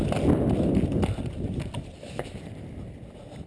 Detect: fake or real fake